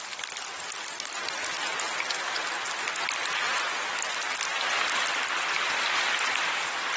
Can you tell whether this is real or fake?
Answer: real